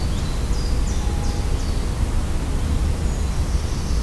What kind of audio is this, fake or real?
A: real